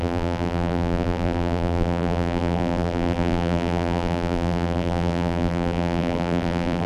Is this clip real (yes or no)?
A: no